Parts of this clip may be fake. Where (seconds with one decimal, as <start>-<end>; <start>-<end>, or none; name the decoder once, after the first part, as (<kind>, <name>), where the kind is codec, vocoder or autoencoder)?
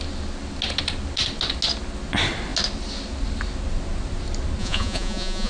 4.6-5.5 (vocoder, Vocos)